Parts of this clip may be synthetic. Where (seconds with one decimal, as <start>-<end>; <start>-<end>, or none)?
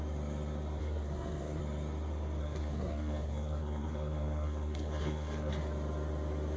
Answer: 0.8-1.6; 2.4-5.5